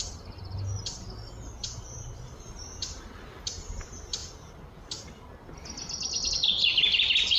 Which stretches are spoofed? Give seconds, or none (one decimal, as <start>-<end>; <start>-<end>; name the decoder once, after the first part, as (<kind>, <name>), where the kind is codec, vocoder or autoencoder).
none